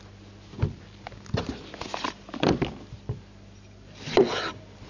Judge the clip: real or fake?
real